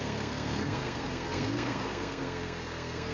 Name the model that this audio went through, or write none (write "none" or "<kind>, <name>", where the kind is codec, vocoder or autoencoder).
codec, SNAC